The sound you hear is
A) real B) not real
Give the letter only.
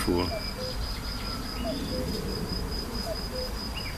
A